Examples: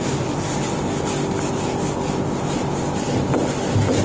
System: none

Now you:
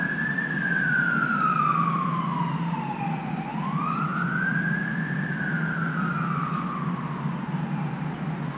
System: none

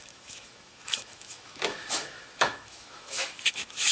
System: autoencoder, DAC-VAE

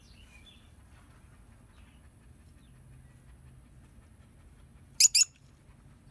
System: none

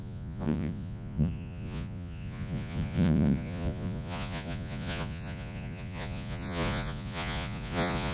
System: vocoder, Vocos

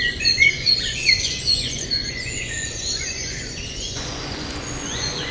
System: vocoder, Vocos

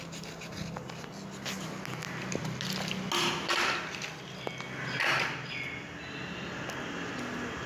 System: none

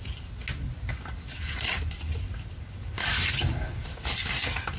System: none